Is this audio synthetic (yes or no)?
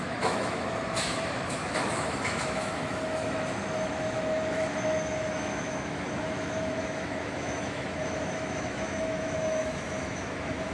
yes